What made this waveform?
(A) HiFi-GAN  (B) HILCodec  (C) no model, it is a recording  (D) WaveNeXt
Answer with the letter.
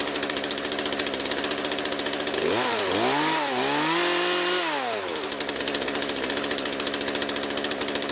C